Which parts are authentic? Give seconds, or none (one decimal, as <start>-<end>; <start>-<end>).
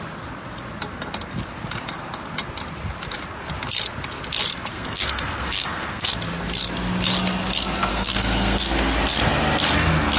0.0-4.7; 6.1-7.9; 8.6-10.2